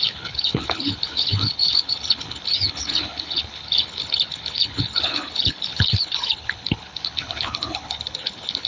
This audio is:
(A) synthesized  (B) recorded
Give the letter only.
A